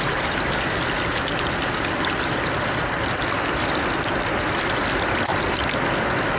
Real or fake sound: real